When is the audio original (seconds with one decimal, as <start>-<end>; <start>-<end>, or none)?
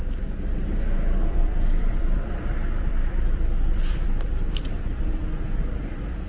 0.0-1.2; 5.0-6.3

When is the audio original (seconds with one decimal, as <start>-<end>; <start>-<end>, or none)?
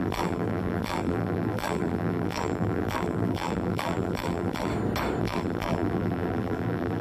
4.7-5.2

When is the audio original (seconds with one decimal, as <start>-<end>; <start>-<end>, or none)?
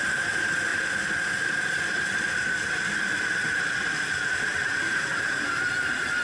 none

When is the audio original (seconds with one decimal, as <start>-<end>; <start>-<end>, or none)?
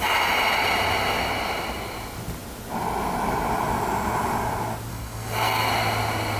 0.0-4.9; 5.7-6.4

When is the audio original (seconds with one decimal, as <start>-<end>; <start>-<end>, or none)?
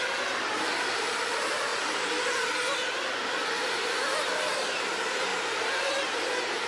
1.7-3.7; 5.3-5.9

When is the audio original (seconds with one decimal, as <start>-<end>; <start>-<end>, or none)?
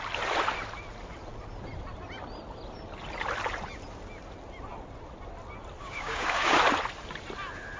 0.0-5.8; 6.6-7.8